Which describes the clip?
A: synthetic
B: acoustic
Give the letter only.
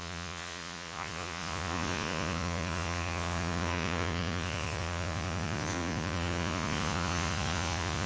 A